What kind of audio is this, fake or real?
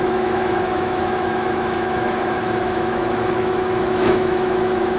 fake